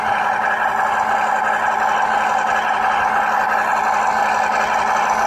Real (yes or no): yes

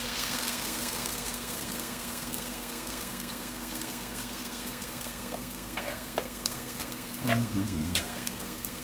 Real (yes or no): no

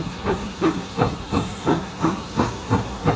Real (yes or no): no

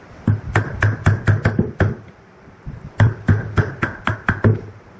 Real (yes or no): yes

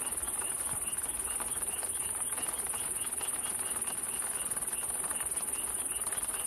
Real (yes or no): yes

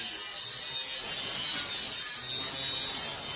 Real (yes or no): yes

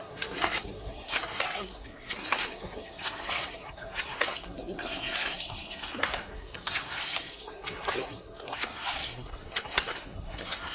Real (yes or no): no